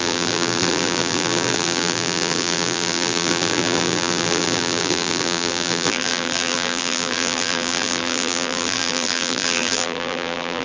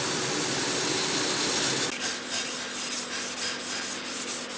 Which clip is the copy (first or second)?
first